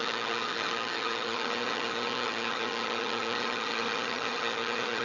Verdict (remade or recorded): remade